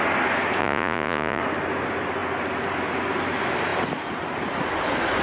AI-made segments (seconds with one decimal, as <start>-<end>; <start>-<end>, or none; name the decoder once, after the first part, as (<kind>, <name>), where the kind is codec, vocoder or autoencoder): 0.6-1.4 (vocoder, Vocos)